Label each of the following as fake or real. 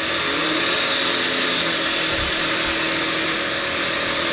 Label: real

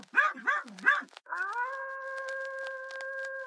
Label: real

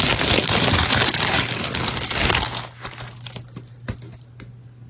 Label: real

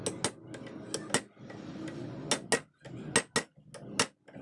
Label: real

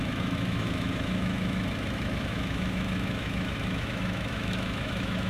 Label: fake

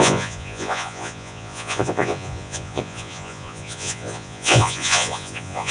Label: fake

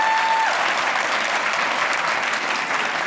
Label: real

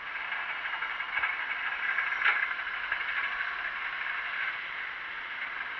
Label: real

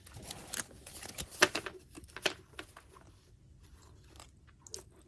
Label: real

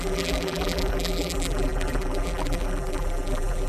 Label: fake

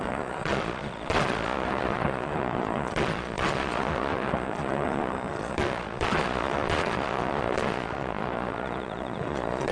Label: fake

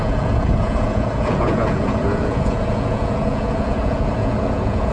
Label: fake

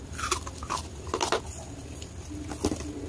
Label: real